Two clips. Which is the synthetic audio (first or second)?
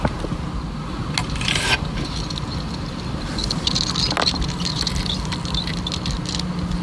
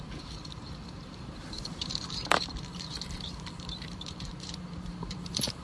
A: second